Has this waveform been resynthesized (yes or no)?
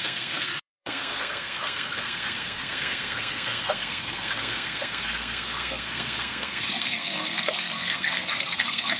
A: yes